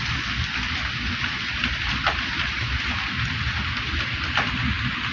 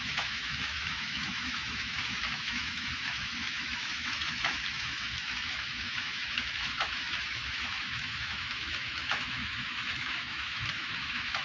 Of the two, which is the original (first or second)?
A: first